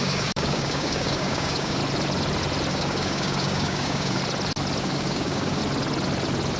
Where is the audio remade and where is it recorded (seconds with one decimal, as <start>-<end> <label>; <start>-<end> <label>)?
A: 0.0-1.8 remade; 1.8-2.7 recorded; 2.7-4.2 remade; 4.2-4.8 recorded; 4.8-5.6 remade; 5.6-6.6 recorded